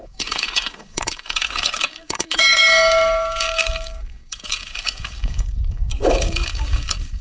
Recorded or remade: remade